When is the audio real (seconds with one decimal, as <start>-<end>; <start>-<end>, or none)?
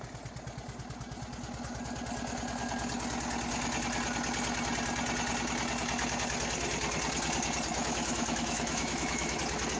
0.0-7.7; 9.4-9.8